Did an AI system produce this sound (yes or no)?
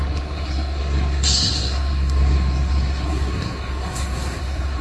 yes